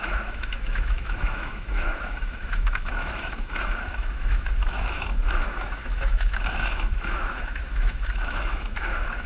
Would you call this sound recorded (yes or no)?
no